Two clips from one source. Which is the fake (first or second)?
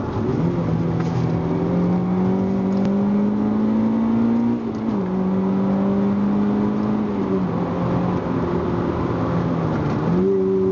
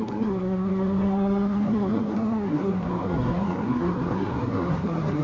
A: second